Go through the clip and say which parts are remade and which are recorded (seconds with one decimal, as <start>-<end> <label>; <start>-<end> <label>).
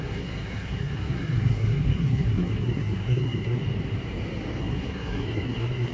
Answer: 0.0-3.6 remade; 3.6-4.6 recorded; 4.6-5.9 remade